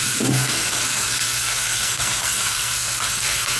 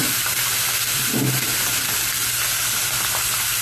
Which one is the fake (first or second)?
first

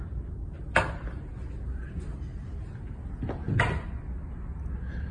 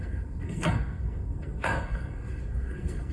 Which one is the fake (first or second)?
second